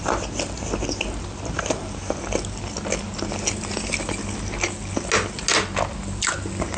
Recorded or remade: recorded